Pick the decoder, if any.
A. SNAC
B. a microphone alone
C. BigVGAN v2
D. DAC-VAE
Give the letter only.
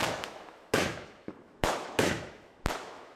D